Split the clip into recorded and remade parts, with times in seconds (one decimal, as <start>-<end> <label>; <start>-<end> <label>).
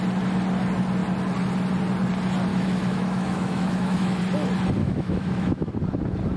0.0-2.5 recorded; 2.5-4.2 remade; 4.2-4.8 recorded; 4.8-5.7 remade; 5.7-6.4 recorded